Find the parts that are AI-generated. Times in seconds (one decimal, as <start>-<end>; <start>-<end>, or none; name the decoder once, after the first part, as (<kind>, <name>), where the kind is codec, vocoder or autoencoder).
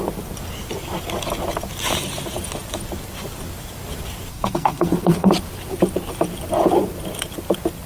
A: 4.3-5.3 (codec, SNAC)